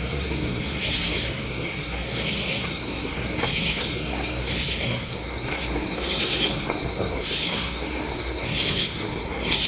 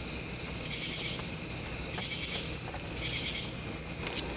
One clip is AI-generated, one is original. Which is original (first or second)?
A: second